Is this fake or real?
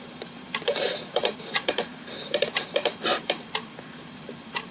fake